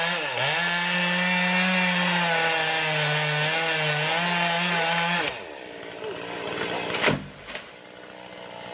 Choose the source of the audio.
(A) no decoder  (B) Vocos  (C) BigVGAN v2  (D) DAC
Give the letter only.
A